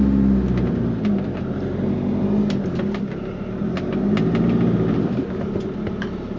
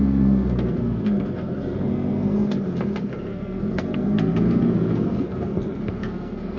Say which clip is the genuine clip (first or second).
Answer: first